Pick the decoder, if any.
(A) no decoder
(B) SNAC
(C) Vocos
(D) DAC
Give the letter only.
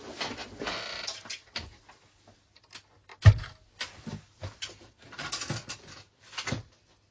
A